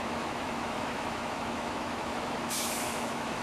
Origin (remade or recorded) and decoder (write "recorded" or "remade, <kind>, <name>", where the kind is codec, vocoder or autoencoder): remade, autoencoder, DAC-VAE